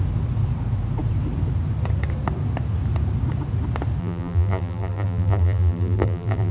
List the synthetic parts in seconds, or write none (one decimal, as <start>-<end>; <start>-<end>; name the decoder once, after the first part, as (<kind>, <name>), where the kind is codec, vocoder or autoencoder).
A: 4.0-6.5 (vocoder, BigVGAN v2)